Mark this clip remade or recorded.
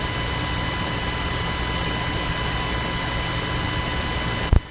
recorded